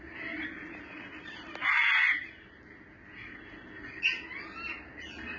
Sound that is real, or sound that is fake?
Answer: real